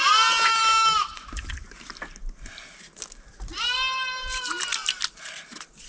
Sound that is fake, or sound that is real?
real